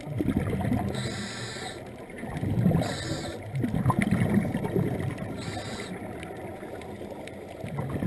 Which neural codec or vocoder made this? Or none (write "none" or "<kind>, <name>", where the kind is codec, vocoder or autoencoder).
none